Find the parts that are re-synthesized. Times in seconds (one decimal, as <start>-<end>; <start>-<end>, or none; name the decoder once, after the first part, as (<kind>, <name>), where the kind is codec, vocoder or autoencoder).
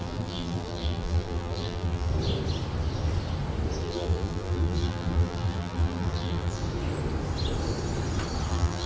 0.0-2.1 (vocoder, BigVGAN v2); 3.8-6.6; 8.5-8.9